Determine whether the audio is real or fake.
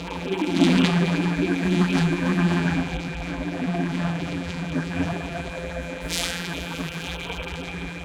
fake